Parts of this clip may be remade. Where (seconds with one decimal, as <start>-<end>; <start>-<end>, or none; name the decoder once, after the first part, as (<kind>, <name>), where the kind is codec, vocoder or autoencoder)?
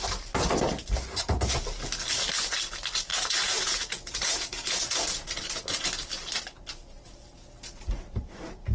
3.1-5.3 (vocoder, Vocos)